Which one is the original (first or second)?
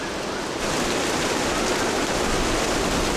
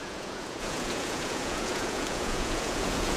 first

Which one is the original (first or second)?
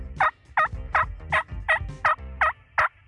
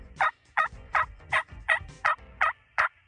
first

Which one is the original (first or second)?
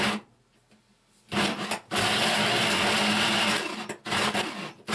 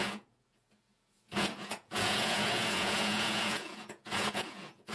first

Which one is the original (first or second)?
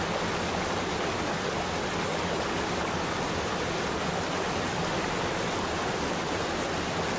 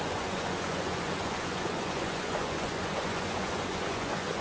first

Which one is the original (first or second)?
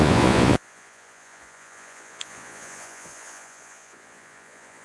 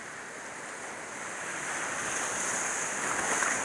second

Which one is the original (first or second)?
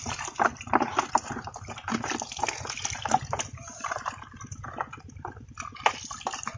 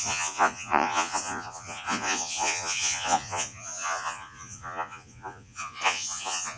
first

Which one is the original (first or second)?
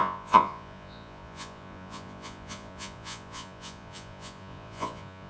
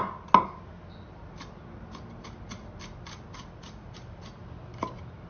second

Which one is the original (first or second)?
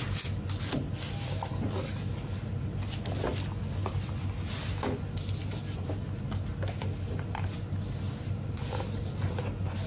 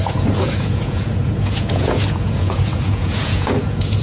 first